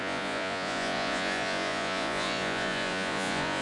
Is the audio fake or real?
fake